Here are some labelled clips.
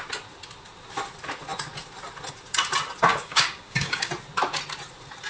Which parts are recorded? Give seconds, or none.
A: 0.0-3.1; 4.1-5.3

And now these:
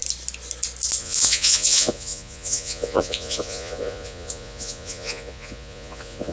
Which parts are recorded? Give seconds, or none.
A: 0.0-1.0

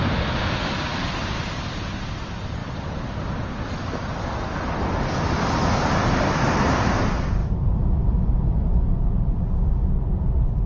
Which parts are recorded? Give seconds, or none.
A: 0.0-10.7

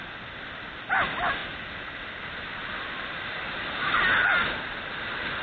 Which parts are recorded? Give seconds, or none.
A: 0.0-5.4

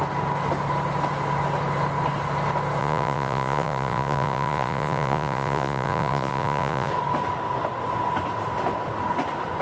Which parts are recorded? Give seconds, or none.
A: 0.0-2.8; 6.9-9.6

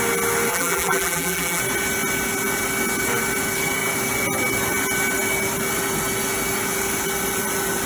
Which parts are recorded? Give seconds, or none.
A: 0.0-0.5; 1.6-7.9

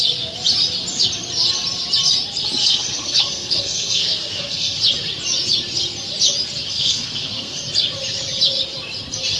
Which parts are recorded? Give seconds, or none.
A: 0.0-2.6; 4.8-6.7; 7.6-9.4

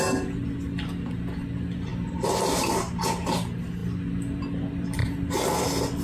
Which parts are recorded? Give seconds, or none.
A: 0.0-1.9; 3.0-3.8; 4.4-5.0